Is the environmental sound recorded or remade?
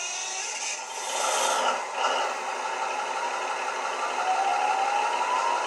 recorded